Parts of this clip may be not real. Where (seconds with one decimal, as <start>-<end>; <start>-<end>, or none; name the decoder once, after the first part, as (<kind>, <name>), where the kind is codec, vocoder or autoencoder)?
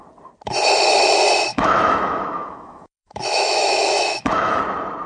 1.5-4.6 (autoencoder, DAC-VAE)